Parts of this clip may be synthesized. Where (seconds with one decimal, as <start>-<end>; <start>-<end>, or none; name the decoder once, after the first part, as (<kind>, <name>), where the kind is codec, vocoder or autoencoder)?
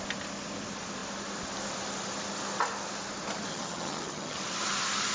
3.5-4.4 (vocoder, HiFi-GAN)